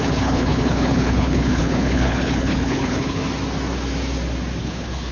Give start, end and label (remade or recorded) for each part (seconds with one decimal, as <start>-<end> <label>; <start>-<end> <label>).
0.0-3.2 remade; 3.2-4.6 recorded; 4.6-5.1 remade